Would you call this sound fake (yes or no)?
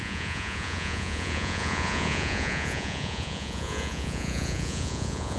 yes